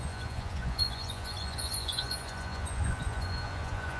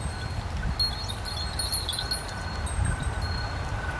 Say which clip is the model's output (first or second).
first